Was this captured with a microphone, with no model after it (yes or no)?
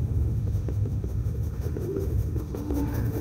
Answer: no